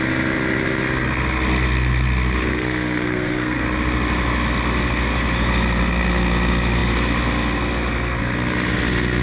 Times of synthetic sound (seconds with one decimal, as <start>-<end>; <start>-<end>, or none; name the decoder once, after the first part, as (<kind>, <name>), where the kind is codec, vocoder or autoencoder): 2.5-3.6 (codec, SNAC)